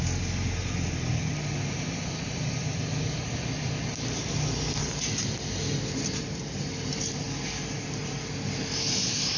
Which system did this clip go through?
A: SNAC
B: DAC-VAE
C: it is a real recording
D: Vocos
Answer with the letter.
C